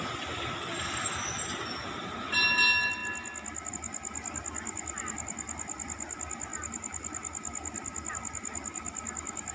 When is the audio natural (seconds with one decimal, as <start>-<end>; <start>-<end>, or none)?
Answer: 0.0-9.5